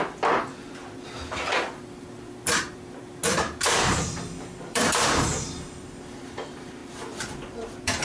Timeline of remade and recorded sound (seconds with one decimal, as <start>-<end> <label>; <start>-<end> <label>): 0.0-3.2 remade; 3.2-3.8 recorded; 3.8-8.0 remade